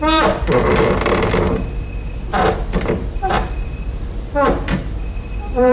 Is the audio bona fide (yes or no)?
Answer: no